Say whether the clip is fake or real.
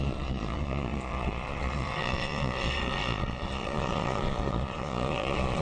fake